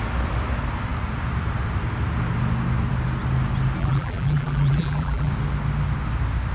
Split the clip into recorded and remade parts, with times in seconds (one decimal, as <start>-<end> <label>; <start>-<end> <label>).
0.0-3.8 recorded; 3.8-5.3 remade; 5.3-6.5 recorded